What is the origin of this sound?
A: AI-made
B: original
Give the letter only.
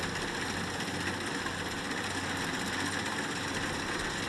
B